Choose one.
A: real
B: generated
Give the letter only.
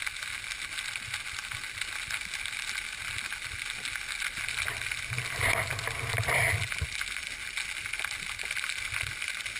A